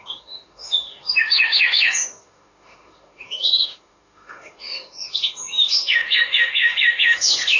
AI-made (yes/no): yes